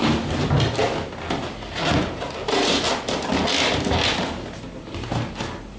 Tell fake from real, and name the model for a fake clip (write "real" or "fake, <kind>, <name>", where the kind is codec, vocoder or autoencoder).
real